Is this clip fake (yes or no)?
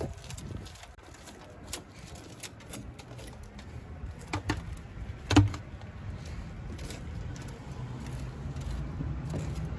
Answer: no